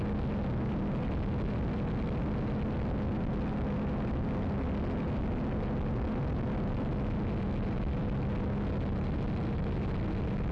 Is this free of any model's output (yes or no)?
yes